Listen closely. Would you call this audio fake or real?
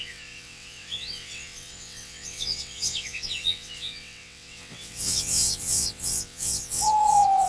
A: fake